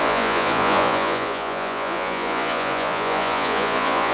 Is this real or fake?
fake